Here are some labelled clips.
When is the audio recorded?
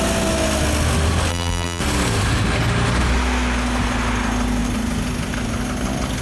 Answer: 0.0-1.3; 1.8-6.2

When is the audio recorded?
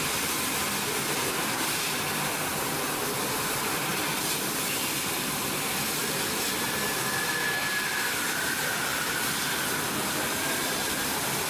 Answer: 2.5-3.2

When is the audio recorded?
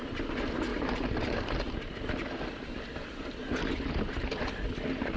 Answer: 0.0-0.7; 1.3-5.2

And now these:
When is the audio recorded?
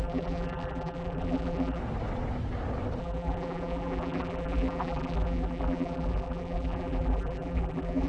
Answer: 1.8-3.0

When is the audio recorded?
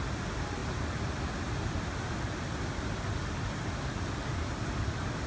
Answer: 0.0-5.3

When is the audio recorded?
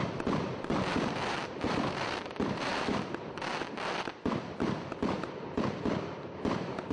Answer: none